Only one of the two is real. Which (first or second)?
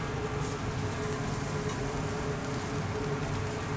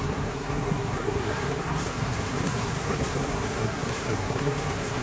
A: first